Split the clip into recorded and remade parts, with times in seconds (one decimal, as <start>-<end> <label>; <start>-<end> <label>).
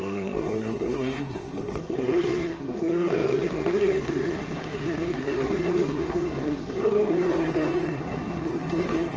0.0-9.2 remade